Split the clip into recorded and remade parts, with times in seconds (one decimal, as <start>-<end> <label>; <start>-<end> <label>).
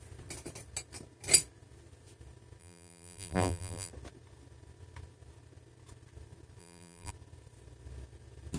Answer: 0.0-2.6 recorded; 2.6-3.9 remade; 3.9-6.6 recorded; 6.6-7.1 remade; 7.1-8.6 recorded